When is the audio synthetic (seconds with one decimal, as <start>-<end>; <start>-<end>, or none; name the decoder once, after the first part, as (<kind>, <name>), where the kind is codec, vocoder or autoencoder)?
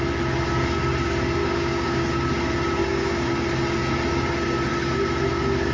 1.4-2.0 (codec, DAC); 2.8-3.3